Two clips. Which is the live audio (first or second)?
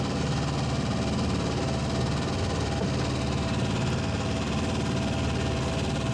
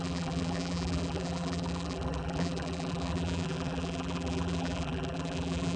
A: first